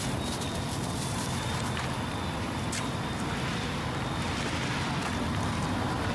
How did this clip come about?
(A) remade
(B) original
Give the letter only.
B